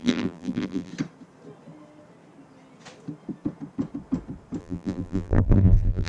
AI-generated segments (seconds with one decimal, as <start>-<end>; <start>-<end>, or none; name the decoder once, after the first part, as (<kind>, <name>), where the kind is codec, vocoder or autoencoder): 0.0-0.9 (vocoder, BigVGAN v2); 4.6-6.1